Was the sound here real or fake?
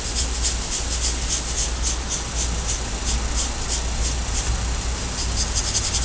real